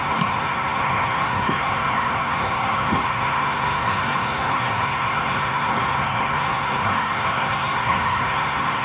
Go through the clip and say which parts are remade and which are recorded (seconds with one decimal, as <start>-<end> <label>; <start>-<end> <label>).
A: 0.0-8.8 remade